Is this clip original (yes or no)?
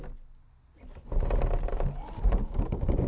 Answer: yes